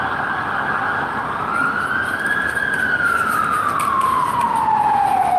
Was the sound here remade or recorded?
recorded